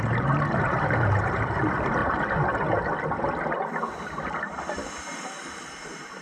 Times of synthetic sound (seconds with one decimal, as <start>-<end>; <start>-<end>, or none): 0.0-2.0; 5.7-6.2